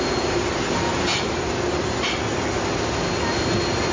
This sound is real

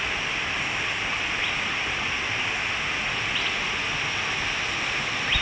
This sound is real